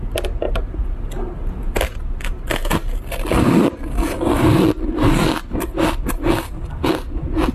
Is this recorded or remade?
recorded